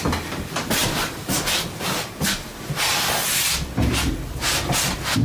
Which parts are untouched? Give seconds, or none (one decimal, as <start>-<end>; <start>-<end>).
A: 0.0-0.8; 2.9-5.2